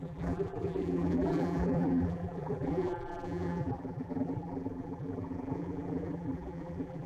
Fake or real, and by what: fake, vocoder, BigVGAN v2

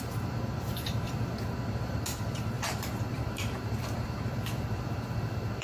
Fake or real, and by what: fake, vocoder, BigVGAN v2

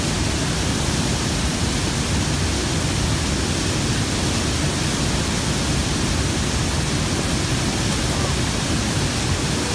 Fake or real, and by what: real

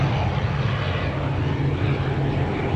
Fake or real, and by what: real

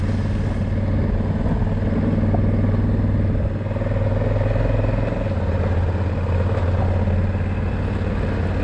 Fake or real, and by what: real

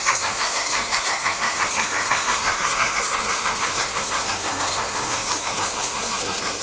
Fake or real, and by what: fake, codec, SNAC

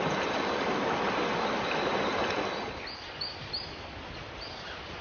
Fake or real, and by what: real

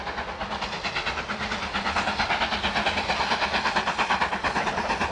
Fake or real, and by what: real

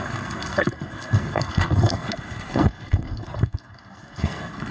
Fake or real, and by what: fake, codec, SNAC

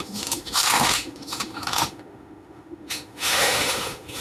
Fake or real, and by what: fake, autoencoder, DAC-VAE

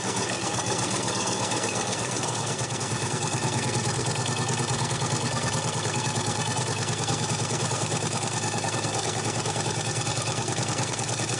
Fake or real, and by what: fake, codec, SNAC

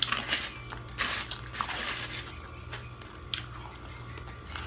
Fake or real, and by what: real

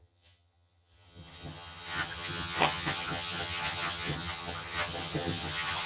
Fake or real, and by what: fake, vocoder, HiFi-GAN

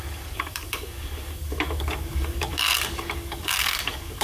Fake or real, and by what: fake, codec, DAC